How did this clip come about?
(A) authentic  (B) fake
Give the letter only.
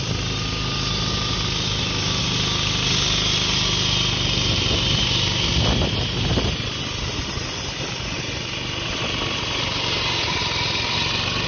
A